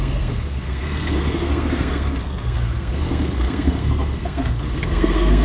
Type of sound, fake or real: fake